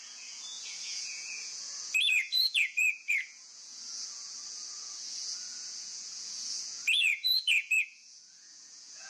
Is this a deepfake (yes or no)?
yes